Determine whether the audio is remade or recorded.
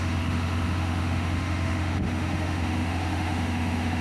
remade